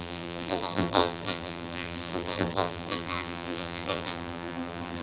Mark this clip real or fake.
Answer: fake